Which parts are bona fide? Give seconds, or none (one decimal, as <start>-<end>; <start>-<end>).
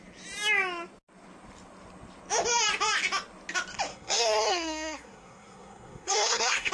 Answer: 0.0-3.9